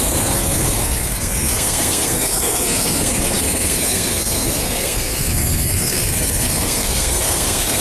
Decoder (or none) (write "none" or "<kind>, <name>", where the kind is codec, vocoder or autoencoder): codec, SNAC